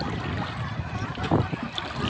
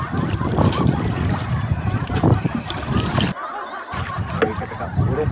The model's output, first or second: second